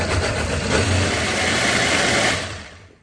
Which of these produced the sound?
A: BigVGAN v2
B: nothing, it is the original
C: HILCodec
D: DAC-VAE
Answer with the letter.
A